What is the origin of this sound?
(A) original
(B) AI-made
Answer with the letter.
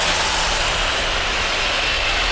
A